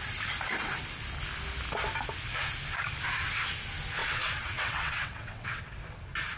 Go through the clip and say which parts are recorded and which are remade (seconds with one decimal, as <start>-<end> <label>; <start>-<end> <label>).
0.0-4.0 recorded; 4.0-5.6 remade; 5.6-6.4 recorded